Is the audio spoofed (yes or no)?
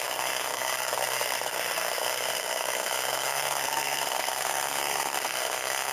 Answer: yes